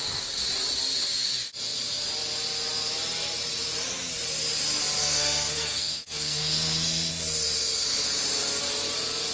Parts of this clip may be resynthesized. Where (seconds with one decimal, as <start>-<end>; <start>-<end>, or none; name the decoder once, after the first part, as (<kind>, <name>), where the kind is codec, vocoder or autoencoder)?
5.0-7.1 (codec, SNAC)